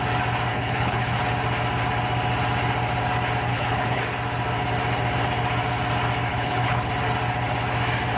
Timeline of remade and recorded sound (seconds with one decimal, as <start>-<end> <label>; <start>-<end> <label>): 0.0-0.5 recorded; 0.5-1.2 remade; 1.2-3.5 recorded; 3.5-4.0 remade; 4.0-6.3 recorded; 6.3-6.9 remade; 6.9-8.2 recorded